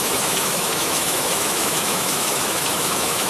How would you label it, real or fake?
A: fake